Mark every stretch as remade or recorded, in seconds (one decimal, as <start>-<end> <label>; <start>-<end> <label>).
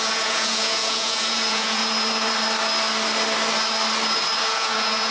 0.0-1.8 remade; 1.8-4.4 recorded; 4.4-5.1 remade